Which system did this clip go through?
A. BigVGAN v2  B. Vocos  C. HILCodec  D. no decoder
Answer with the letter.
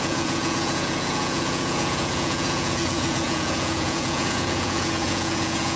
B